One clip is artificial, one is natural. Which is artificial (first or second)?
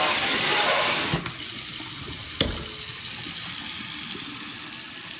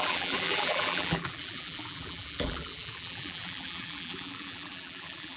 second